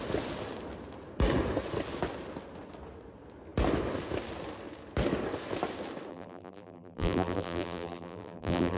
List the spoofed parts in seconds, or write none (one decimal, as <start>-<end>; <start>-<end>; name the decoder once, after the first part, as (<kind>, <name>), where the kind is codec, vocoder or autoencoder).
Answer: 6.1-8.8 (vocoder, BigVGAN v2)